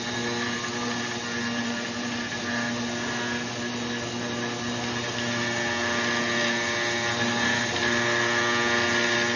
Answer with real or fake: real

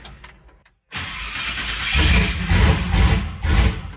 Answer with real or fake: real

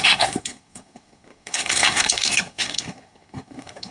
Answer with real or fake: fake